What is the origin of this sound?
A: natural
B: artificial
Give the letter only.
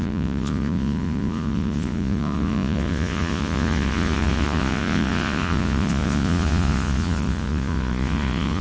B